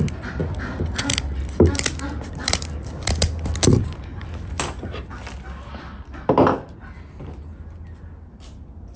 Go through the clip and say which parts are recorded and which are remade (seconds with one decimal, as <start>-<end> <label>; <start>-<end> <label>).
0.0-0.4 recorded; 0.4-5.0 remade; 5.0-9.0 recorded